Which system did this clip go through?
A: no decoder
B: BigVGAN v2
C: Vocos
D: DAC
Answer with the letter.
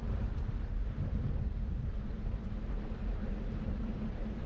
B